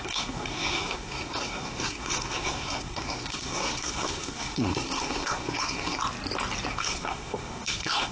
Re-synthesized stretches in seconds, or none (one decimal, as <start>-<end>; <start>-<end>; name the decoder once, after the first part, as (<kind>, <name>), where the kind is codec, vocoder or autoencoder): 0.0-6.0 (codec, SNAC); 6.7-8.1